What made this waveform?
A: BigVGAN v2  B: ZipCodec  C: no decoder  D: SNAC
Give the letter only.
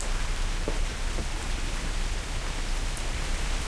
A